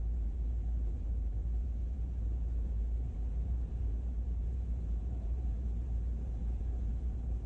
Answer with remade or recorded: remade